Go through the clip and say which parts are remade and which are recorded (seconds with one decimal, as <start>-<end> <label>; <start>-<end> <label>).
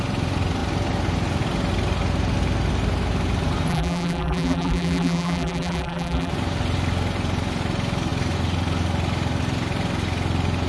0.0-3.7 recorded; 3.7-6.3 remade; 6.3-10.7 recorded